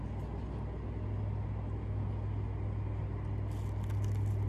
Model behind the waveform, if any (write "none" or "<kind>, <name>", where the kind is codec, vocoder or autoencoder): none